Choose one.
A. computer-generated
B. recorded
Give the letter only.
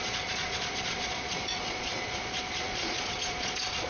A